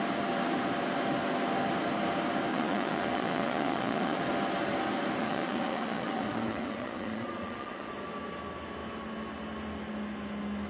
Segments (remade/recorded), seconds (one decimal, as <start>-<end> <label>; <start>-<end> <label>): 0.0-2.5 recorded; 2.5-4.2 remade; 4.2-5.2 recorded; 5.2-7.9 remade; 7.9-10.7 recorded